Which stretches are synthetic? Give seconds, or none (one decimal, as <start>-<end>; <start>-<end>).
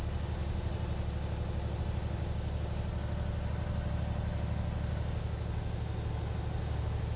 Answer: none